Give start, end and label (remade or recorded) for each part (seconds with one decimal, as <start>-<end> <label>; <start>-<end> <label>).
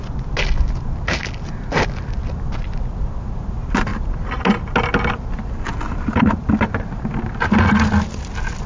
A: 0.0-8.7 recorded